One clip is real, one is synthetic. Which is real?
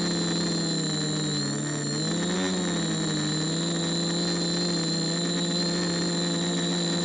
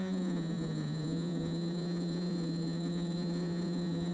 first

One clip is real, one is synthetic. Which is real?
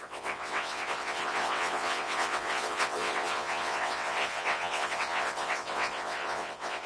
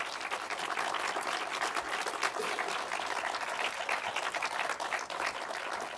second